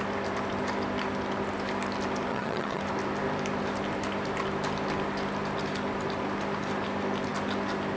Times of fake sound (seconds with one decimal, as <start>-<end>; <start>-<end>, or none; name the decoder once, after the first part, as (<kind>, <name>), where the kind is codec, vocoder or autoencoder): 2.3-2.8 (vocoder, HiFi-GAN)